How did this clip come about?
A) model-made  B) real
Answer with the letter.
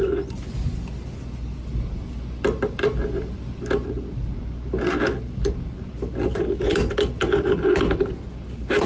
B